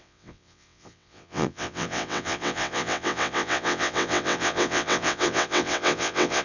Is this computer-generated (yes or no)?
yes